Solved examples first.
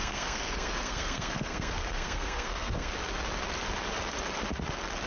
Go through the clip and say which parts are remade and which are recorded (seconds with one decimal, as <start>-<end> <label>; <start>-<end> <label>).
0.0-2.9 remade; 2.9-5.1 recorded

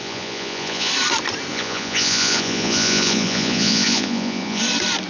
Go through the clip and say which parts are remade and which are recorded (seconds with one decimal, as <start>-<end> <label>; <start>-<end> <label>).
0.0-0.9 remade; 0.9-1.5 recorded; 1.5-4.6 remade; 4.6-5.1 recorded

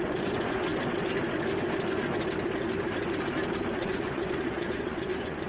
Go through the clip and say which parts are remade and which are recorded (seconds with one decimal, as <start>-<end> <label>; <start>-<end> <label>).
0.0-0.7 remade; 0.7-3.7 recorded; 3.7-5.5 remade